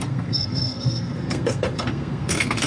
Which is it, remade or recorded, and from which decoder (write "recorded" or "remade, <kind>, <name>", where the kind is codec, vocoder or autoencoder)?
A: remade, codec, SNAC